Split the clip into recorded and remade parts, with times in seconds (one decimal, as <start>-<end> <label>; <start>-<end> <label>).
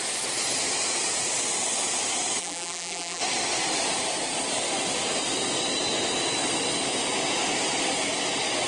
0.0-2.4 recorded; 2.4-3.2 remade; 3.2-8.7 recorded